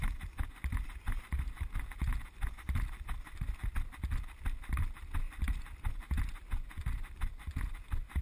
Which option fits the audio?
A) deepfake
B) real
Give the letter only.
B